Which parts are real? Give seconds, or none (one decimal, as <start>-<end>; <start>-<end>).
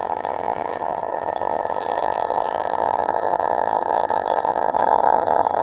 none